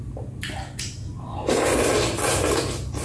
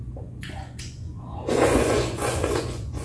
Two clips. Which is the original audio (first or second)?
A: first